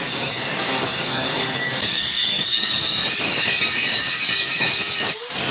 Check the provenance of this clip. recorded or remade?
remade